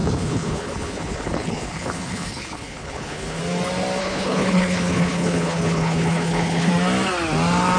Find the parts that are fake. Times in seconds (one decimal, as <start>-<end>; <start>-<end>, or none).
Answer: 0.0-3.4; 4.0-6.7